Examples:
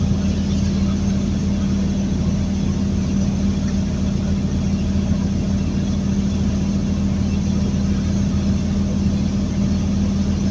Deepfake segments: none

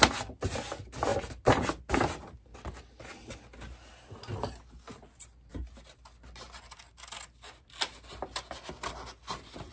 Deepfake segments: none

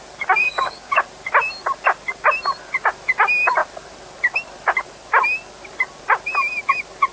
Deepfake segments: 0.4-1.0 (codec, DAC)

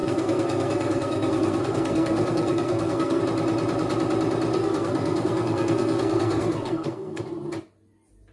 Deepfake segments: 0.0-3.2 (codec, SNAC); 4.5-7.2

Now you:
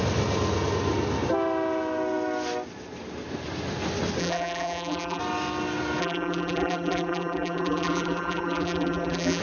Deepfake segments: 4.2-5.2 (vocoder, BigVGAN v2); 6.0-9.4

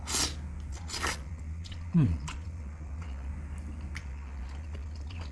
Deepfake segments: 0.7-3.3 (vocoder, Vocos); 4.0-5.3

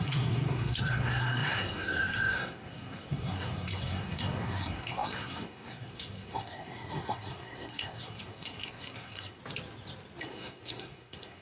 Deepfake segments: 0.0-9.4 (codec, SNAC); 10.2-11.4

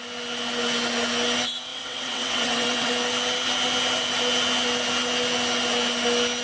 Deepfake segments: 1.7-2.9 (vocoder, WaveNeXt)